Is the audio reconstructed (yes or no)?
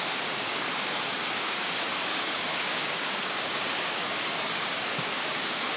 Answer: yes